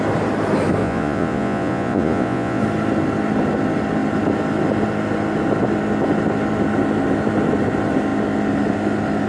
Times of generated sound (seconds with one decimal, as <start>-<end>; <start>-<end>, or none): 0.8-2.6